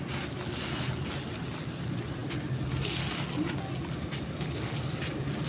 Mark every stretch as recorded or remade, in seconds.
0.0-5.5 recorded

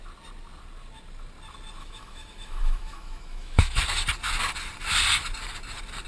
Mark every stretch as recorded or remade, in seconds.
0.0-1.8 recorded; 1.8-3.8 remade; 3.8-6.1 recorded

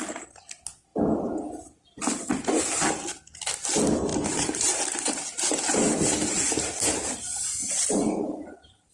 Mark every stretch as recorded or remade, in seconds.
0.0-4.1 recorded; 4.1-5.2 remade; 5.2-7.6 recorded; 7.6-8.9 remade

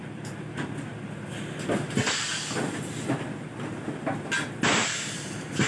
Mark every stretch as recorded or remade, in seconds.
0.0-2.3 remade; 2.3-4.7 recorded; 4.7-5.7 remade

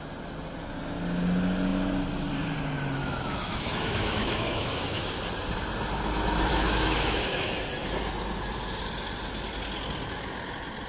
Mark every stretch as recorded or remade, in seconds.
0.0-3.0 recorded; 3.0-5.2 remade; 5.2-6.5 recorded; 6.5-7.5 remade; 7.5-10.9 recorded

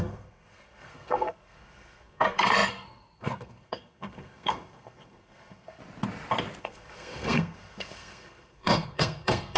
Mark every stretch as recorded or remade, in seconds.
0.0-5.8 remade; 5.8-6.6 recorded; 6.6-9.6 remade